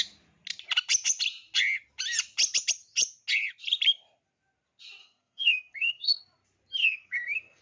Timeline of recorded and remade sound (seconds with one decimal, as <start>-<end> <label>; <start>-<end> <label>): 0.0-5.0 recorded; 5.0-6.2 remade; 6.2-6.8 recorded; 6.8-7.6 remade